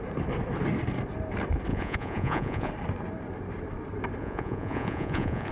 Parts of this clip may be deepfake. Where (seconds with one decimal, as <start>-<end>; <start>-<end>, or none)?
1.7-2.7; 4.2-5.5